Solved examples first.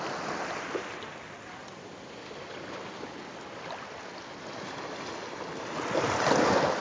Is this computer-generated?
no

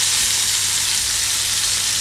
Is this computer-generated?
no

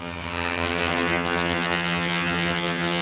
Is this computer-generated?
yes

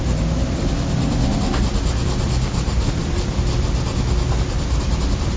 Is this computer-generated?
no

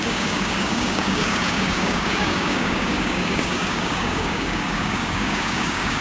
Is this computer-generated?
yes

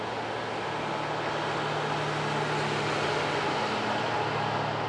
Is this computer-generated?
no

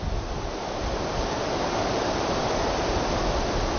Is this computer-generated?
no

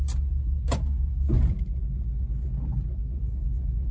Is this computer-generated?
no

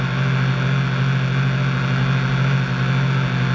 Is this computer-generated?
no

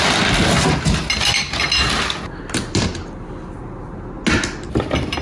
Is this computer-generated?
no